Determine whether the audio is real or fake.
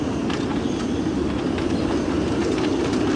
real